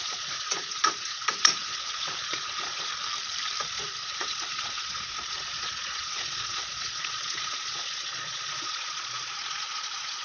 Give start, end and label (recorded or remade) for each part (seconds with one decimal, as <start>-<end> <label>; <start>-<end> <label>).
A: 0.0-2.9 remade; 2.9-3.6 recorded; 3.6-10.2 remade